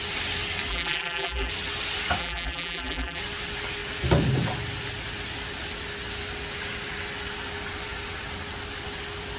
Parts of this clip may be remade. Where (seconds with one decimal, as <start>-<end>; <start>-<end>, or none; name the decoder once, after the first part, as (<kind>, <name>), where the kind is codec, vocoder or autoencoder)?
0.7-1.5 (vocoder, BigVGAN v2); 2.2-3.2